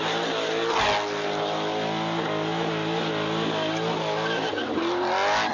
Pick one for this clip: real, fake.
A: real